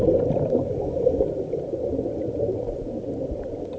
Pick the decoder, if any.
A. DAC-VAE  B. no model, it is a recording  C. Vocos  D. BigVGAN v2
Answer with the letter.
B